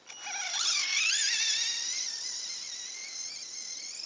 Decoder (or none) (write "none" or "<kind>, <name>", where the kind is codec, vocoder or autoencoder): none